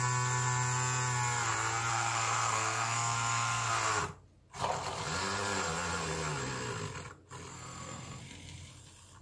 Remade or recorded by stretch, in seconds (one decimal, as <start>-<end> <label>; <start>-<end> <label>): 0.0-1.9 recorded; 1.9-3.7 remade; 3.7-7.5 recorded; 7.5-8.2 remade; 8.2-9.2 recorded